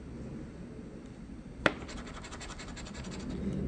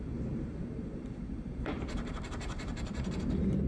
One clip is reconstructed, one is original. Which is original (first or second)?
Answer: first